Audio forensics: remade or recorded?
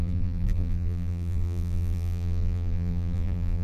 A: remade